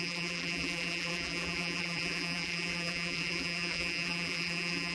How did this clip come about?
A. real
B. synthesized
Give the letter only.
B